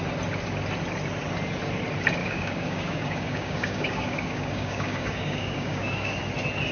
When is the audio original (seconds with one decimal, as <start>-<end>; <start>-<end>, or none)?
0.0-2.2; 6.2-6.7